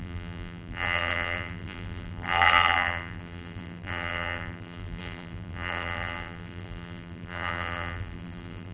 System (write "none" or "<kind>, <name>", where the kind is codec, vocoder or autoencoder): vocoder, BigVGAN v2